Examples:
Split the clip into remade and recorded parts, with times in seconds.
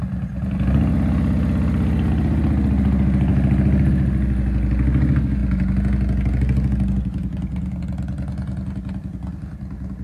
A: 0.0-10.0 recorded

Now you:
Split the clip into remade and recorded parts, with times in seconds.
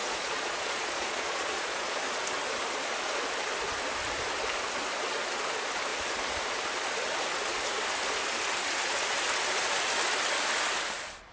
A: 0.0-2.0 remade; 2.0-11.3 recorded